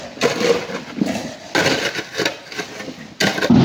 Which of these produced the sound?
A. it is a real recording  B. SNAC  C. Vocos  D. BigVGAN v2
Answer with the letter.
A